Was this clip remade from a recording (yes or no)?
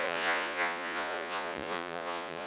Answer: yes